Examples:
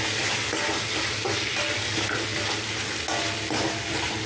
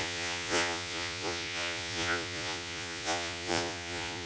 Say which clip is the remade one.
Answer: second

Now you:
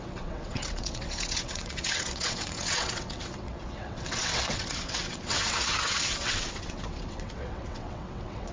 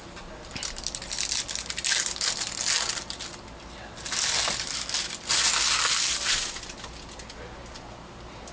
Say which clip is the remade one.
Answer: first